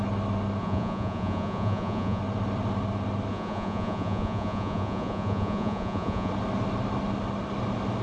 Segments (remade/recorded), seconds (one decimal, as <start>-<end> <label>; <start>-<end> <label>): 0.0-0.6 recorded; 0.6-2.2 remade; 2.2-3.3 recorded; 3.3-6.3 remade; 6.3-8.0 recorded